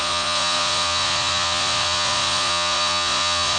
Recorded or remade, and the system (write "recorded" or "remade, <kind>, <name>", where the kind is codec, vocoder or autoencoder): remade, vocoder, Vocos